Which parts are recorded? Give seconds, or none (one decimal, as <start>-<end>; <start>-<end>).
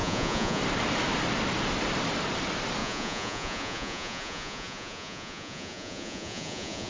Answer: 0.6-2.8